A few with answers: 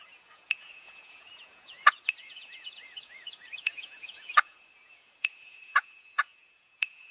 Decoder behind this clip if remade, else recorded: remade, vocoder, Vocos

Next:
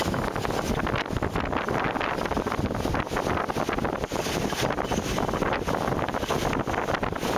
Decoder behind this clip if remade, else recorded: recorded